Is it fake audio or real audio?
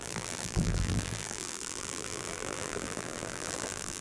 fake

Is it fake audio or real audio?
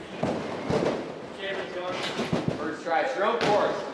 real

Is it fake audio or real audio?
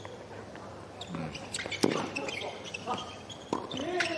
fake